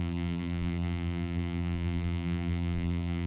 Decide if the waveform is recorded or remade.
remade